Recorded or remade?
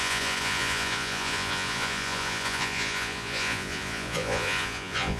remade